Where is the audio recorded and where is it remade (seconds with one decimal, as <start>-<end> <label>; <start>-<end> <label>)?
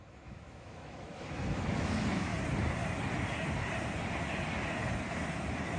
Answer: 0.0-2.3 remade; 2.3-5.8 recorded